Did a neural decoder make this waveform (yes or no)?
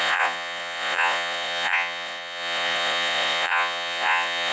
yes